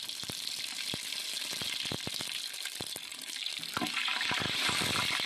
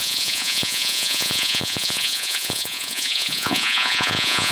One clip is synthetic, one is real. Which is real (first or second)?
first